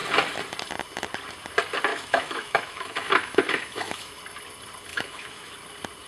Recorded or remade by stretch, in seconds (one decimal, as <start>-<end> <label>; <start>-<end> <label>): 0.0-1.9 recorded; 1.9-4.2 remade; 4.2-4.9 recorded; 4.9-5.5 remade; 5.5-6.1 recorded